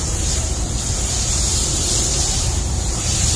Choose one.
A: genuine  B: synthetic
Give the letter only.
B